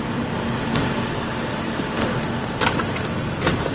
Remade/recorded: recorded